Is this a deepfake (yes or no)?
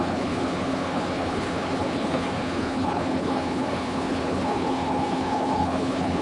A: yes